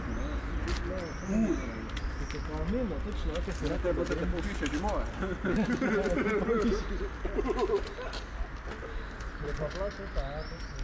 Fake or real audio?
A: real